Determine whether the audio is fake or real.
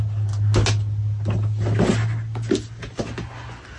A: real